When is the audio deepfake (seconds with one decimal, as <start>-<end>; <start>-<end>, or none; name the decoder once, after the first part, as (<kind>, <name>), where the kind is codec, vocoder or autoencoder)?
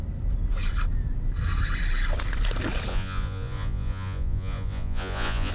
2.9-5.5 (vocoder, Vocos)